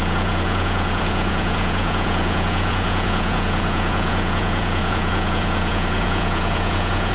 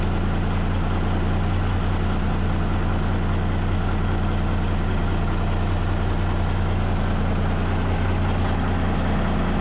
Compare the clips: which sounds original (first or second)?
second